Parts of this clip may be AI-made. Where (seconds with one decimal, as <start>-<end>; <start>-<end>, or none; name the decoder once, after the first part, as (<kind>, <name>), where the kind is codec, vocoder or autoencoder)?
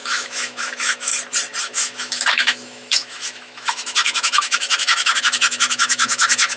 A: 0.0-1.1 (autoencoder, DAC-VAE); 1.6-6.6